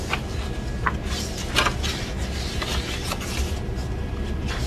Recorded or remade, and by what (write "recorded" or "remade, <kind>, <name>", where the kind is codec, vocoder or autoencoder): recorded